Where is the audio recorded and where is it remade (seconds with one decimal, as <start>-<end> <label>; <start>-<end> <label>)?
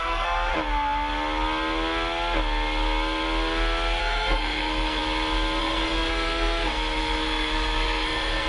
0.0-0.5 remade; 0.5-4.0 recorded; 4.0-5.0 remade; 5.0-5.6 recorded; 5.6-8.5 remade